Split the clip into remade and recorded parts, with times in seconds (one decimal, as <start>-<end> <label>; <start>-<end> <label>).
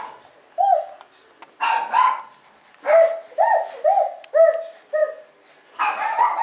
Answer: 0.0-6.4 recorded